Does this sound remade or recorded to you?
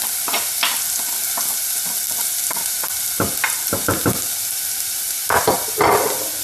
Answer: recorded